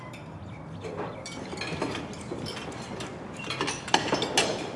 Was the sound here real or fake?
real